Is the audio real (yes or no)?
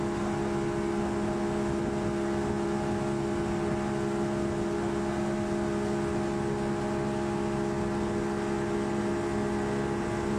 yes